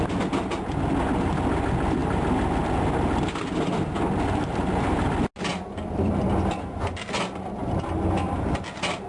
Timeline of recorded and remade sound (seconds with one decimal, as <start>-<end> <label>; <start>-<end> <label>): 0.0-5.5 recorded; 5.5-6.6 remade; 6.6-9.1 recorded